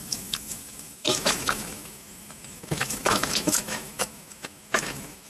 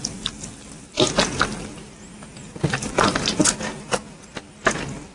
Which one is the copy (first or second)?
first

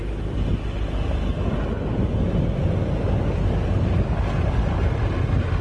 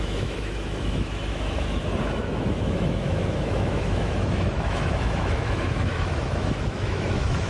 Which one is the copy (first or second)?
second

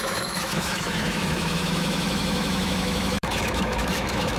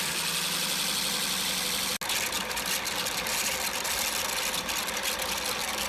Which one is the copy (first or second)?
first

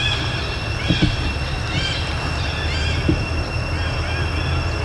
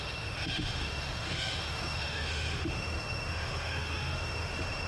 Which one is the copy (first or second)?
second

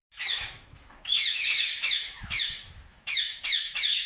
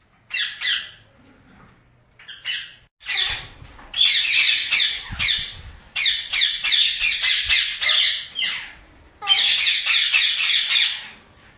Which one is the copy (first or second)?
first